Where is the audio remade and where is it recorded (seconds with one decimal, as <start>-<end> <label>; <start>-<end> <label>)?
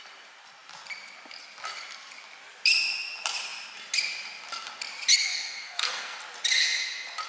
0.0-5.3 recorded; 5.3-6.2 remade; 6.2-7.3 recorded